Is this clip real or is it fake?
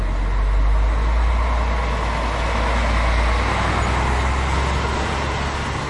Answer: real